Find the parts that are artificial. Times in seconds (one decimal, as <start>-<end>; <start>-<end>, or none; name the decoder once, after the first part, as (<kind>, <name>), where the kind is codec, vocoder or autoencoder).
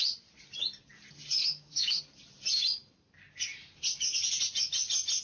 1.4-2.0 (autoencoder, DAC-VAE)